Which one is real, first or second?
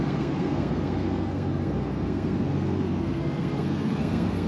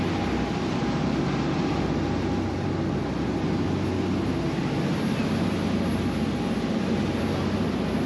second